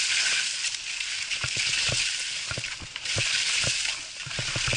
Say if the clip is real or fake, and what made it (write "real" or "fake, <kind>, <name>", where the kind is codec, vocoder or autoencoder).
real